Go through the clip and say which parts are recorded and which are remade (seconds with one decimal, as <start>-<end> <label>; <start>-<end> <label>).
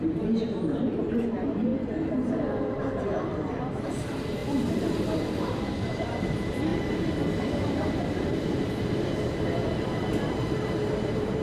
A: 0.0-1.7 remade; 1.7-2.3 recorded; 2.3-11.4 remade